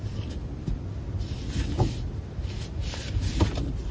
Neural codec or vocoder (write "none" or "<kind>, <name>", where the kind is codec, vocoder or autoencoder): none